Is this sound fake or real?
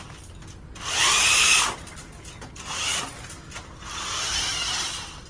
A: real